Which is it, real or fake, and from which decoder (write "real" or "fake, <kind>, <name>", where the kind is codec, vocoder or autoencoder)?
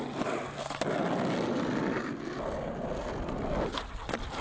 real